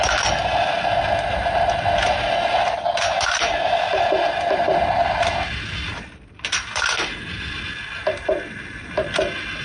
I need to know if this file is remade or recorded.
recorded